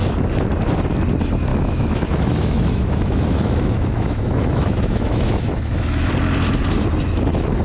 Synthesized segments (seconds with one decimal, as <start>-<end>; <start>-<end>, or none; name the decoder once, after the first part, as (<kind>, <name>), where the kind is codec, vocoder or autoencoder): 1.5-6.1 (autoencoder, DAC-VAE)